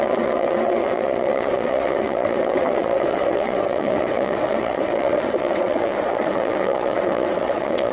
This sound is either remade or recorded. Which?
remade